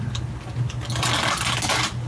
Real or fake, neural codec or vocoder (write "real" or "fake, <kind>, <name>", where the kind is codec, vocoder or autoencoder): real